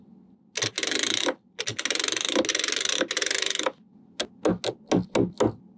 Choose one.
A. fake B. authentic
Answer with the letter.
B